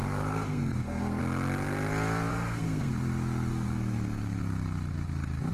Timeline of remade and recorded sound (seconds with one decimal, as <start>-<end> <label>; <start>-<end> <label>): 0.0-1.2 remade; 1.2-2.3 recorded; 2.3-2.9 remade; 2.9-3.5 recorded; 3.5-4.4 remade; 4.4-5.5 recorded